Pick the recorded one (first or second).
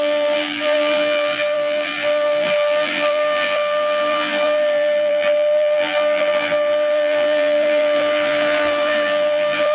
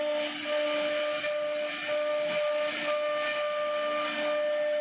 second